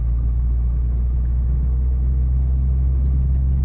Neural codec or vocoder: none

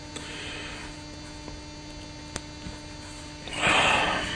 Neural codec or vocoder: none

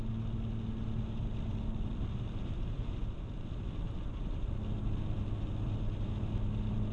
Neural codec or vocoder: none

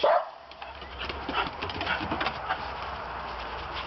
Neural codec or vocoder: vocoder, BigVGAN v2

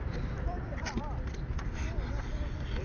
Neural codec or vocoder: vocoder, BigVGAN v2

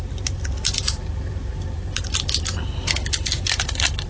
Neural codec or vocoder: vocoder, BigVGAN v2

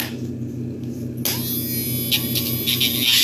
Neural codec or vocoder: none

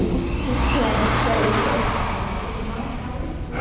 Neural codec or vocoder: none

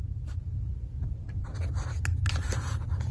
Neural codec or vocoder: vocoder, BigVGAN v2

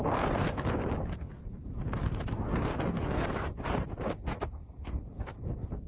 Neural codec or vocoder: vocoder, BigVGAN v2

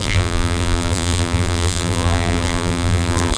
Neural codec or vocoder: vocoder, BigVGAN v2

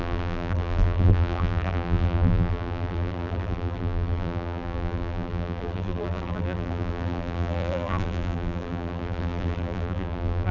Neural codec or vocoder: vocoder, BigVGAN v2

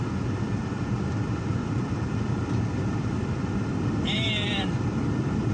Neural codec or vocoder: vocoder, BigVGAN v2